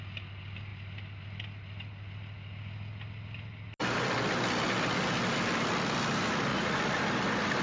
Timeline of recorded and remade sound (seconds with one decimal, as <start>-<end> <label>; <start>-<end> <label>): 0.0-6.5 recorded; 6.5-7.0 remade; 7.0-7.6 recorded